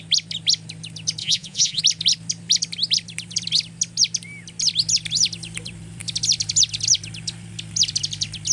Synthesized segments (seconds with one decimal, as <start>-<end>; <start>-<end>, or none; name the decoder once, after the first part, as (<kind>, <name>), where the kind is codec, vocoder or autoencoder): 1.2-1.8 (vocoder, Vocos)